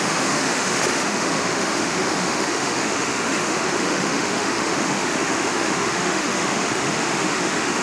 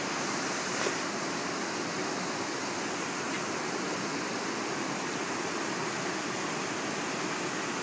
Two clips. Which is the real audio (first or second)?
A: second